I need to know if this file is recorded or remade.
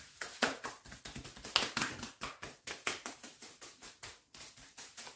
recorded